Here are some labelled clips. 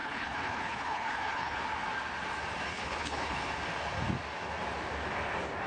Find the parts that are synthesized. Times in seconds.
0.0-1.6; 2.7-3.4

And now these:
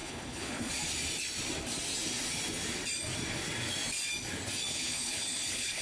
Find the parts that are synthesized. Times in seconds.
0.0-0.7; 4.7-5.8